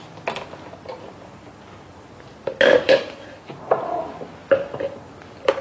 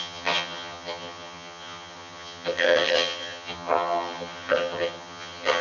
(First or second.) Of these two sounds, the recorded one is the first